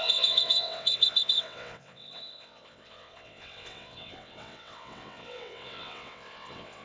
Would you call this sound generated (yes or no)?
yes